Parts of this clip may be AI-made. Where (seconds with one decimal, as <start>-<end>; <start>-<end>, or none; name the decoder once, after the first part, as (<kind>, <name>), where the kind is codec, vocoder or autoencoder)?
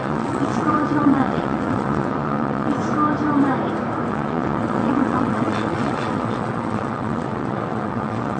0.0-2.8 (vocoder, WaveNeXt); 4.1-8.4